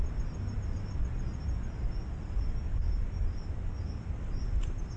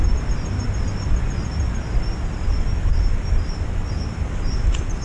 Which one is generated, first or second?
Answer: second